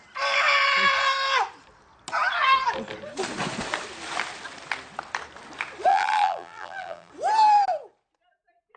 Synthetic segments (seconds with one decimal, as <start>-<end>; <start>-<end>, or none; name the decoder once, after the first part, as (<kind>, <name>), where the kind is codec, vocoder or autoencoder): 5.9-7.1 (vocoder, BigVGAN v2)